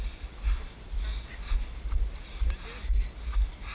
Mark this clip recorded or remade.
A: recorded